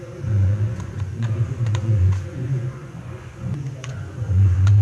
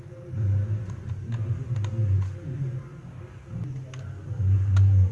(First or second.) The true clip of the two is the second